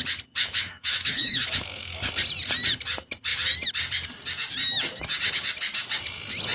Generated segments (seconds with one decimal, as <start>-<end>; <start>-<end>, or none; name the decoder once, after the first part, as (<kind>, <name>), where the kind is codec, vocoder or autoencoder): 0.4-2.1 (autoencoder, DAC-VAE)

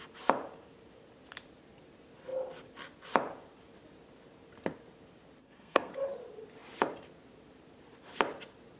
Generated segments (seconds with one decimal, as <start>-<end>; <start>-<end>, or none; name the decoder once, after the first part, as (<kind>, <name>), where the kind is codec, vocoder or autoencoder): 5.4-5.9 (codec, SNAC)

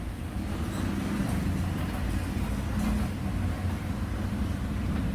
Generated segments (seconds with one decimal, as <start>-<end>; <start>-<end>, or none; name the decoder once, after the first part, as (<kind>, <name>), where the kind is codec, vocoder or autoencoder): none

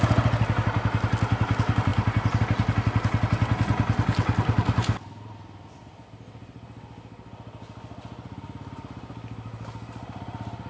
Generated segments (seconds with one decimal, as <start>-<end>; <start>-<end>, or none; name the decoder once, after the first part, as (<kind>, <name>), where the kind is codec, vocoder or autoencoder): none

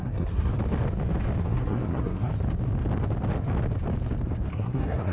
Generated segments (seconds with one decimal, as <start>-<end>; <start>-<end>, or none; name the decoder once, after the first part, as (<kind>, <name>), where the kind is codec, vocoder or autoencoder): 0.0-0.5 (codec, SNAC); 1.4-2.3; 4.5-5.1

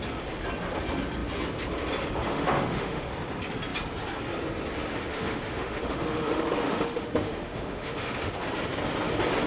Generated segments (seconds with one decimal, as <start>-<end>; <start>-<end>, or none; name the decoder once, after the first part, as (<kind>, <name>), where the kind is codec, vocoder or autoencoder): 2.3-3.1 (autoencoder, DAC-VAE); 5.1-8.3